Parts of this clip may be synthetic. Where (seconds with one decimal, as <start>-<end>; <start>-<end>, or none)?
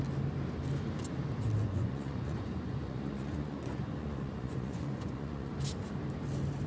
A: 1.6-5.5